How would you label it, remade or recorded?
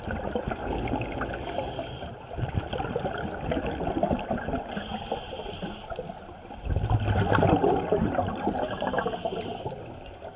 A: recorded